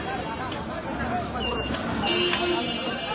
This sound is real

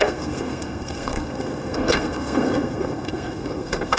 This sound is fake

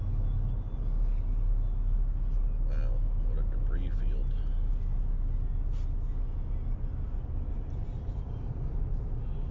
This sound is real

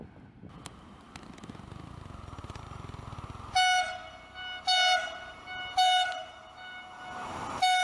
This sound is real